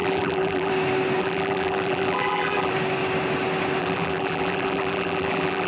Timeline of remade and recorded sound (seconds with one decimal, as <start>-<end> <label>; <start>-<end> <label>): 0.0-0.7 remade; 0.7-1.2 recorded; 1.2-2.7 remade; 2.7-3.8 recorded; 3.8-5.7 remade

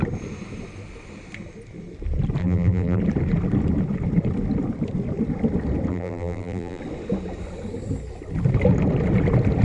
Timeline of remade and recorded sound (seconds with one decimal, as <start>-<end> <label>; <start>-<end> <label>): 0.0-2.4 recorded; 2.4-3.0 remade; 3.0-5.9 recorded; 5.9-6.8 remade; 6.8-9.6 recorded

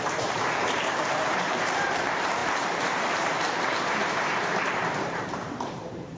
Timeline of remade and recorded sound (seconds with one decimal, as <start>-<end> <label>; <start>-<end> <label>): 0.0-6.2 remade

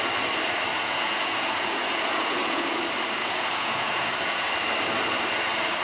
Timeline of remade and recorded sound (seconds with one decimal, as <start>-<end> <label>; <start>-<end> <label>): 0.0-0.7 recorded; 0.7-2.8 remade; 2.8-3.2 recorded; 3.2-4.5 remade; 4.5-5.8 recorded